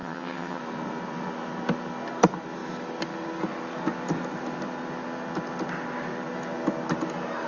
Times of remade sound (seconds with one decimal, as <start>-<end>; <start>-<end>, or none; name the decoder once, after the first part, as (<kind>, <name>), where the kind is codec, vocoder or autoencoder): 0.0-0.6 (vocoder, HiFi-GAN)